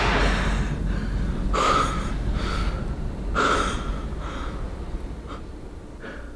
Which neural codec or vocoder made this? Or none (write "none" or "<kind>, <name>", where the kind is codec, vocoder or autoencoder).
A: none